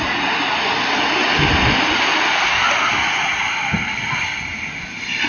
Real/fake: real